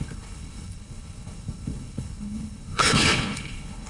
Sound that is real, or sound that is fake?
fake